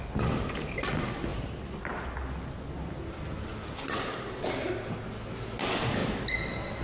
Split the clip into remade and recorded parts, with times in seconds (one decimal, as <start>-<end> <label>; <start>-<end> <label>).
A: 0.0-6.8 recorded